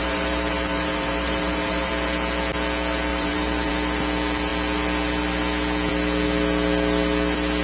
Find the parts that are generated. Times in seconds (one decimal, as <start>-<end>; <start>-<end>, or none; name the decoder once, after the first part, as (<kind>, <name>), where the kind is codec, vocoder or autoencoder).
0.0-1.9 (vocoder, BigVGAN v2); 3.1-3.7